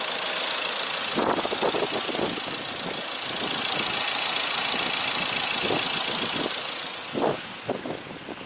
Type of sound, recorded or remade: recorded